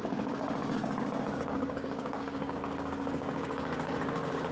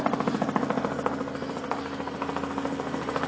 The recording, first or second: second